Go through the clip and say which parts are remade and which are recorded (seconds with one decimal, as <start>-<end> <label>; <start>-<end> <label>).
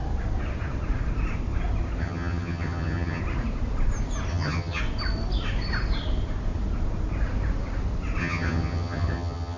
0.0-2.0 recorded; 2.0-3.2 remade; 3.2-4.3 recorded; 4.3-4.8 remade; 4.8-8.2 recorded; 8.2-9.6 remade